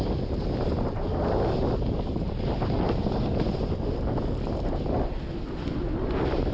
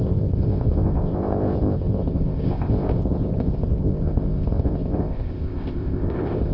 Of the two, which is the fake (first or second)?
second